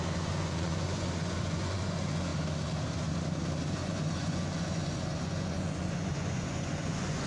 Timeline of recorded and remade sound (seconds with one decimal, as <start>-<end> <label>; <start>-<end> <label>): 0.0-2.3 remade; 2.3-3.7 recorded; 3.7-7.3 remade